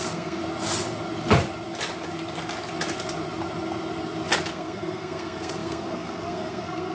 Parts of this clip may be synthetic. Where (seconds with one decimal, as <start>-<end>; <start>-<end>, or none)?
0.0-0.4; 4.5-6.9